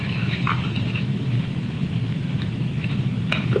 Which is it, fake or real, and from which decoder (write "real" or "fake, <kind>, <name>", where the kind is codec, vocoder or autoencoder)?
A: fake, autoencoder, DAC-VAE